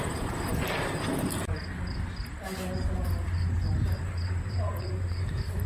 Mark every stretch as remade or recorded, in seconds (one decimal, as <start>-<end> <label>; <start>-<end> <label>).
0.0-0.5 remade; 0.5-3.7 recorded; 3.7-5.7 remade